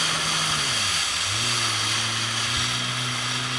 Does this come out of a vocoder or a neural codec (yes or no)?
no